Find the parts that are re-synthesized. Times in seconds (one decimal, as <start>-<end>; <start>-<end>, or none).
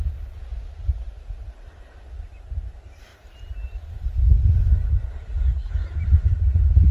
0.5-1.8; 3.1-3.9